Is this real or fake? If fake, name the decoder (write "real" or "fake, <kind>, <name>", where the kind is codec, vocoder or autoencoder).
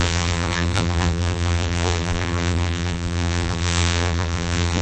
fake, vocoder, BigVGAN v2